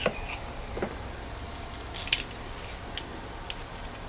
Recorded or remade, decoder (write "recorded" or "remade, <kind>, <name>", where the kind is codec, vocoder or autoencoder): recorded